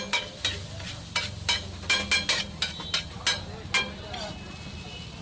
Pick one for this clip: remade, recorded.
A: recorded